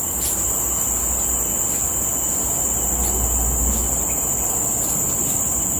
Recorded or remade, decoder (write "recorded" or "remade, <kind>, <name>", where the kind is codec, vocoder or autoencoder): recorded